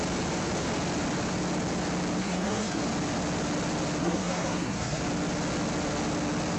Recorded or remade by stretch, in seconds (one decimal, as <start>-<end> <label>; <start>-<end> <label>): 0.0-2.2 recorded; 2.2-2.8 remade; 2.8-4.0 recorded; 4.0-5.0 remade; 5.0-6.6 recorded